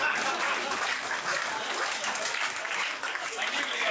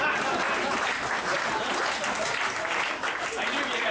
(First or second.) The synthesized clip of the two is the first